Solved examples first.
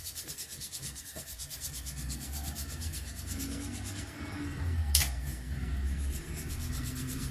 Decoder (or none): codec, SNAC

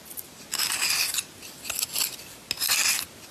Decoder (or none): none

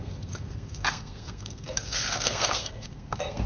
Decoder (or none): codec, SNAC